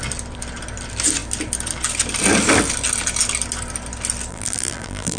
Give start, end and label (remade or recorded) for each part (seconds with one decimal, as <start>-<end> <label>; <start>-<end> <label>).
0.0-4.3 recorded; 4.3-5.2 remade